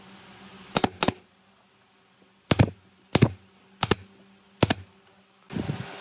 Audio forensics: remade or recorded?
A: recorded